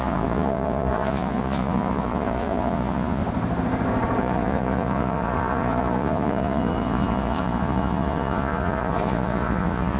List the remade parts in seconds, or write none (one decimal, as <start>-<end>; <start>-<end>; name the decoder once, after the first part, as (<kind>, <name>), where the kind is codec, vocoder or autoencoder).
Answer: 0.0-3.2 (vocoder, Vocos); 4.2-10.0